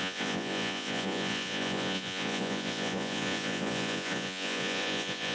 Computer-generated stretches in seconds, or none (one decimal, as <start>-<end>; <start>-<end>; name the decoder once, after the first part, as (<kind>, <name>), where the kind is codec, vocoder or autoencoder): 0.0-5.3 (vocoder, Vocos)